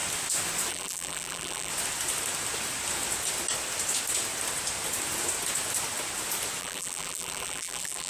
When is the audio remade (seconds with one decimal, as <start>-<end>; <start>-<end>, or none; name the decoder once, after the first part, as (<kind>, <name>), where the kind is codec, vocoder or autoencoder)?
0.7-1.7 (vocoder, BigVGAN v2); 6.6-8.1